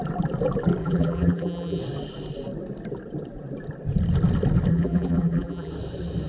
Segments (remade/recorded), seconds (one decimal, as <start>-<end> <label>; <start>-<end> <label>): 0.0-0.8 recorded; 0.8-1.8 remade; 1.8-4.7 recorded; 4.7-5.7 remade; 5.7-6.3 recorded